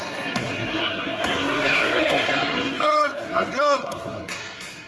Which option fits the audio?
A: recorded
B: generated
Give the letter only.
B